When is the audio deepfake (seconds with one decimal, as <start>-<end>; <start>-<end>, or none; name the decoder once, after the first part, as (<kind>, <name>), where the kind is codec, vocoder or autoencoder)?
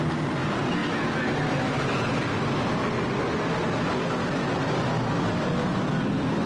none